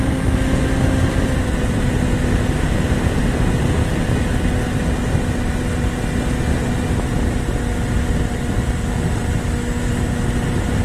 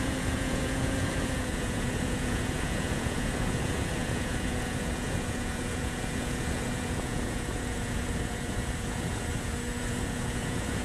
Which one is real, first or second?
first